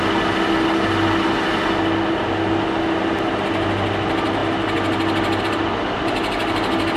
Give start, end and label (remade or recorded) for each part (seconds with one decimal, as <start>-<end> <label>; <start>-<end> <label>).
0.0-7.0 recorded